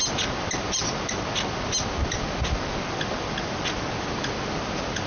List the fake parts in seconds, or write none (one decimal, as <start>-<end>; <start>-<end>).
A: none